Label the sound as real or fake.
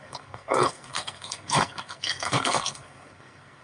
fake